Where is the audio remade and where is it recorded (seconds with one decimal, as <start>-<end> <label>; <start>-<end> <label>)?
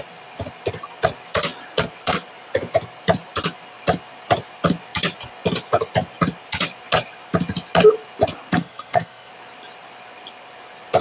0.0-8.5 recorded; 8.5-9.3 remade; 9.3-11.0 recorded